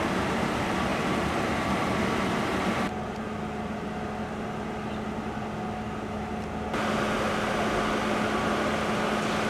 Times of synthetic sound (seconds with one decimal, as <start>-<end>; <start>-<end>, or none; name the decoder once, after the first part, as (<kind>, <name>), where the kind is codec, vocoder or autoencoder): 0.9-2.0 (vocoder, BigVGAN v2)